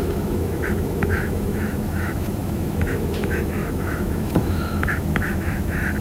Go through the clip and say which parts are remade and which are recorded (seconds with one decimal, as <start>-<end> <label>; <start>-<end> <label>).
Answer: 0.0-6.0 remade